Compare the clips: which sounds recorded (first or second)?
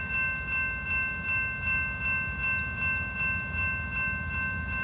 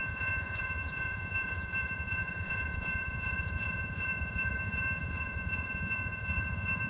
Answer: first